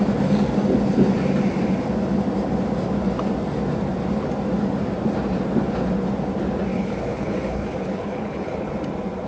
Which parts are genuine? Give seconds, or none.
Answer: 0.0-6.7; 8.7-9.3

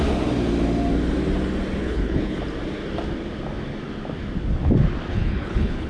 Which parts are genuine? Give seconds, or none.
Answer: 0.0-1.8; 2.4-5.1

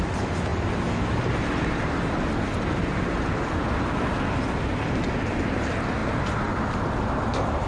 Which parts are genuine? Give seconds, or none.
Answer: 0.0-7.7

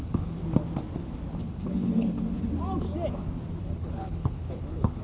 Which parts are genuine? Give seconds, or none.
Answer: 0.4-1.4; 2.5-3.6

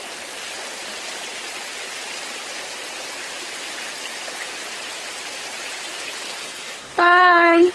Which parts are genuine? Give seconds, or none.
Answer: 0.0-6.4

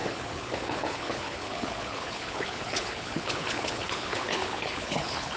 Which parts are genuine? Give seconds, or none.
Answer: none

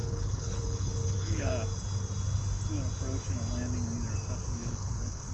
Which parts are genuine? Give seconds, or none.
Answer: 1.5-4.7